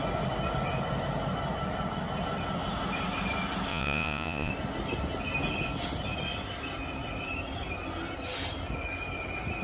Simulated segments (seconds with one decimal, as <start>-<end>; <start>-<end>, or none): 3.7-4.5